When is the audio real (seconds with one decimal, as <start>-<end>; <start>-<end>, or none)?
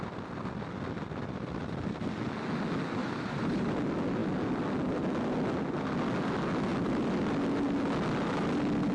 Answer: 0.0-3.0; 3.7-8.9